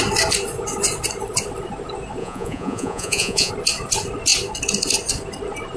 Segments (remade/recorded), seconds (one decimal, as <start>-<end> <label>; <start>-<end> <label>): 0.0-2.2 recorded; 2.2-3.5 remade; 3.5-5.8 recorded